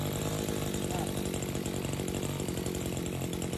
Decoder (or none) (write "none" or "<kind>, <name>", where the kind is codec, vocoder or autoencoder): none